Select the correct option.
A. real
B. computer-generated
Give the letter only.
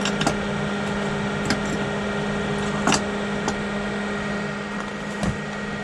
A